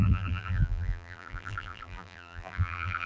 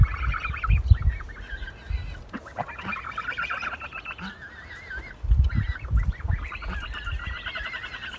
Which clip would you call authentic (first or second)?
second